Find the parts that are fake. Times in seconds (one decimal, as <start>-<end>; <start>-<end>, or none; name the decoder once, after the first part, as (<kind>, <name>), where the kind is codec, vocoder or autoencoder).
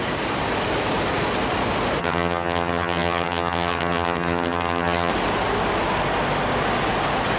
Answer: 2.0-5.1 (vocoder, HiFi-GAN)